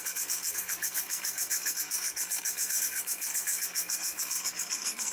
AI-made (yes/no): yes